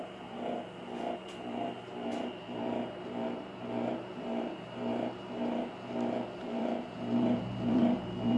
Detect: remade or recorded remade